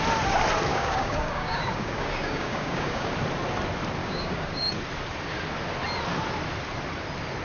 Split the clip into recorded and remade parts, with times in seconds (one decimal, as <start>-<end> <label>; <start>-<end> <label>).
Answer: 0.0-0.7 recorded; 0.7-3.1 remade; 3.1-4.0 recorded; 4.0-4.7 remade; 4.7-7.4 recorded